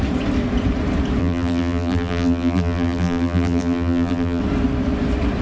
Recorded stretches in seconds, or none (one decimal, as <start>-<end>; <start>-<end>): 0.0-1.2; 4.4-5.4